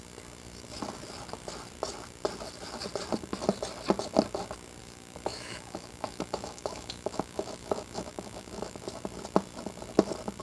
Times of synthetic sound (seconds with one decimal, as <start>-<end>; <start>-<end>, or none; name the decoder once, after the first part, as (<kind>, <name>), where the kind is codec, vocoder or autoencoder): 4.8-8.8 (autoencoder, DAC-VAE)